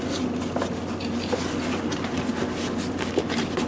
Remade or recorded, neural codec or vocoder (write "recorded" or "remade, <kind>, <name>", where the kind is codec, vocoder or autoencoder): recorded